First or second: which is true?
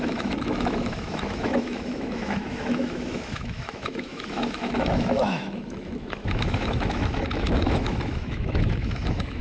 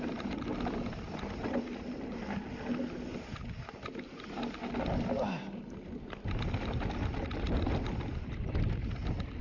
second